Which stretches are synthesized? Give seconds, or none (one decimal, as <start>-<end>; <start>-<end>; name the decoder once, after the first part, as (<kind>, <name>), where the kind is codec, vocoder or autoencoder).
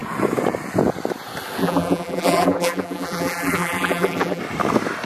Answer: 1.6-4.4 (vocoder, BigVGAN v2)